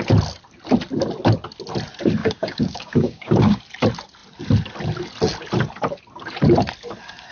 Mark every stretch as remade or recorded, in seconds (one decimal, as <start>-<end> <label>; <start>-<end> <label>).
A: 0.0-2.2 recorded; 2.2-3.6 remade; 3.6-7.3 recorded